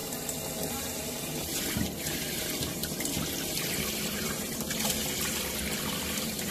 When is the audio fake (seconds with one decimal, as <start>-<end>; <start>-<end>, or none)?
0.7-2.8; 4.1-5.0; 5.9-6.5